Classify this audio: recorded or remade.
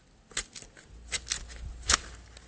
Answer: recorded